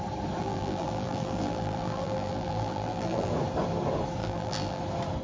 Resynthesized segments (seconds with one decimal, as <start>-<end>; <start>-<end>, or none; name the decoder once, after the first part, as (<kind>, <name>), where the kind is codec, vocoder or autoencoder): 0.4-3.3 (vocoder, BigVGAN v2); 4.2-4.8